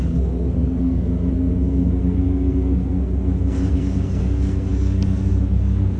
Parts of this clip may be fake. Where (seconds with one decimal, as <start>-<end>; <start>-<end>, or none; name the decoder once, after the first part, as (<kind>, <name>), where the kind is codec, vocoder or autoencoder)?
0.0-6.0 (codec, SNAC)